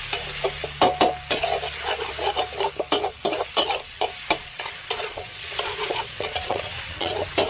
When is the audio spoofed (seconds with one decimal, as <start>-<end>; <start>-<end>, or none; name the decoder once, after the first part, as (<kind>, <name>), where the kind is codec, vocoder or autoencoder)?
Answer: 4.4-7.1 (vocoder, Vocos)